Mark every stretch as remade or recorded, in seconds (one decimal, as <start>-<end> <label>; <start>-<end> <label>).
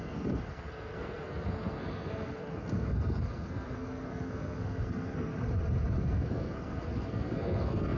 0.0-5.3 remade; 5.3-6.0 recorded; 6.0-8.0 remade